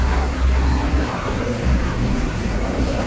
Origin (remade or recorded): remade